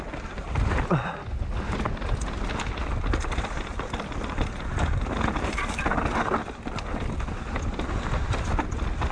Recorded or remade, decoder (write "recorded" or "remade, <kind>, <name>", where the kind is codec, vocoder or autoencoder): recorded